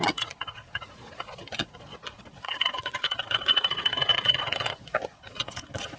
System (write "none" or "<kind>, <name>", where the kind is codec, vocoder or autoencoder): vocoder, Vocos